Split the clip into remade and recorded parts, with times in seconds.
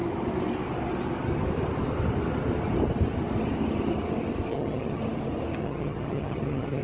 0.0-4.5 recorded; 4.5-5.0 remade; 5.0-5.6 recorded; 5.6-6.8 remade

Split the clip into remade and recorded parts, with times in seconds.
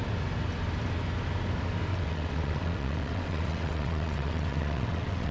0.0-1.9 recorded; 1.9-5.3 remade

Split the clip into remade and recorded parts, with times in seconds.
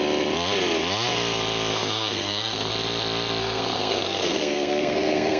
0.0-1.7 recorded; 1.7-2.7 remade; 2.7-3.4 recorded; 3.4-5.4 remade